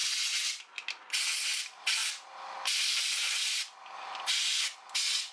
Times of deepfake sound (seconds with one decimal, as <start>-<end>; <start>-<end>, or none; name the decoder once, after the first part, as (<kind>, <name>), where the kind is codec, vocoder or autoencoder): none